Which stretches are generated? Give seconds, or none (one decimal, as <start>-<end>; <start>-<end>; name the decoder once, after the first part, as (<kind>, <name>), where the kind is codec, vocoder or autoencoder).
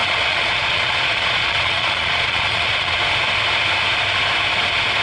0.0-3.0 (vocoder, Vocos)